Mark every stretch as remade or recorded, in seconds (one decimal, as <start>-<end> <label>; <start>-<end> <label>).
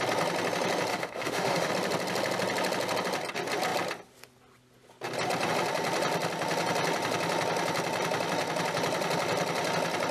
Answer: 0.0-0.9 recorded; 0.9-1.7 remade; 1.7-10.1 recorded